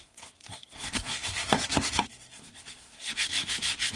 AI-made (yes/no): yes